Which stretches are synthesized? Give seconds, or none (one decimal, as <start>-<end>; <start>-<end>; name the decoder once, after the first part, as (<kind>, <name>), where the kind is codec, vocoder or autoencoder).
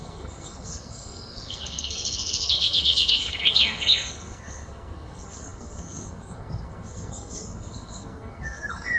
0.0-9.0 (codec, SNAC)